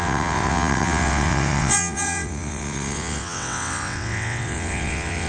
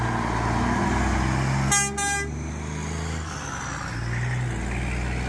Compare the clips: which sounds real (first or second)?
second